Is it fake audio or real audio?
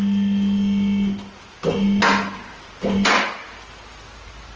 real